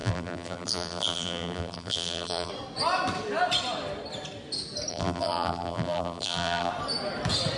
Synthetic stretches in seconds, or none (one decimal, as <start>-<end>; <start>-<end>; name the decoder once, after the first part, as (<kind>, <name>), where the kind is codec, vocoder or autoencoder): 0.0-2.5 (vocoder, BigVGAN v2); 4.9-6.7